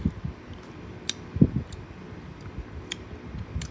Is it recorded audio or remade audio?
recorded